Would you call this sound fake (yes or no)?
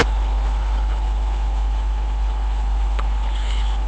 yes